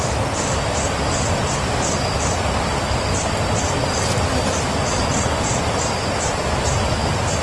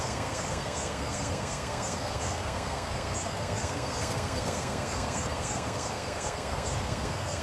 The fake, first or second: second